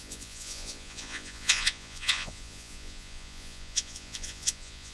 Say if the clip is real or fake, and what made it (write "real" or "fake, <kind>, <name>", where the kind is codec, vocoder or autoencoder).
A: fake, vocoder, Vocos